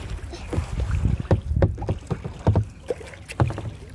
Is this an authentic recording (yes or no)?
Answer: yes